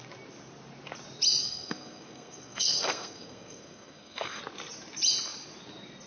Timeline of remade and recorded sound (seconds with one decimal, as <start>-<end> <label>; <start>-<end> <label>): 0.0-1.4 recorded; 1.4-4.4 remade; 4.4-6.1 recorded